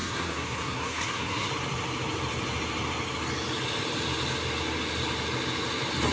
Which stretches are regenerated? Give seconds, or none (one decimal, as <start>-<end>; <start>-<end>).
0.0-1.5

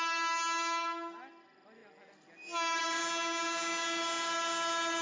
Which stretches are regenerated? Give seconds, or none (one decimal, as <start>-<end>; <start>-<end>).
none

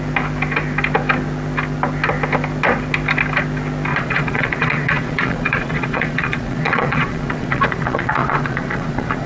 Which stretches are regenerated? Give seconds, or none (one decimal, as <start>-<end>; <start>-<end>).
3.9-9.3